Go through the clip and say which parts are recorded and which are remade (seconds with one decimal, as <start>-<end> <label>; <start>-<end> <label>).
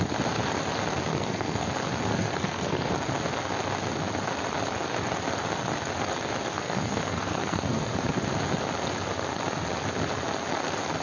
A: 0.0-1.1 recorded; 1.1-1.7 remade; 1.7-2.1 recorded; 2.1-2.9 remade; 2.9-6.5 recorded; 6.5-8.0 remade; 8.0-11.0 recorded